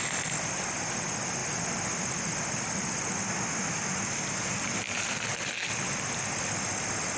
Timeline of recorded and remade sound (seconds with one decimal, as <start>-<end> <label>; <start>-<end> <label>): 0.0-7.2 recorded